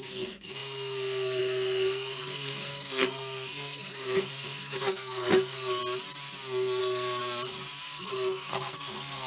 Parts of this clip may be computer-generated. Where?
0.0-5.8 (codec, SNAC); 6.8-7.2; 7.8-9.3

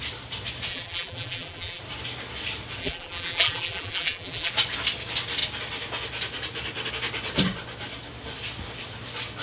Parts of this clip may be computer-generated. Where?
0.7-1.8 (vocoder, BigVGAN v2); 2.8-4.5

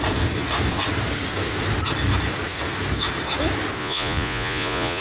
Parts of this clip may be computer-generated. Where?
3.8-5.0 (vocoder, Vocos)